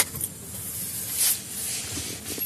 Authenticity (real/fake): real